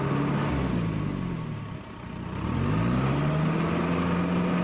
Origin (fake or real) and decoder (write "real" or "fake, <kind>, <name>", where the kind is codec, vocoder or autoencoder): real